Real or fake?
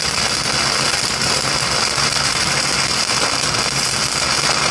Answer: real